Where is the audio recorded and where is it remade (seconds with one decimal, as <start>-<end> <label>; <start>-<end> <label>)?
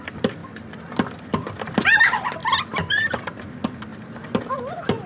0.0-5.1 recorded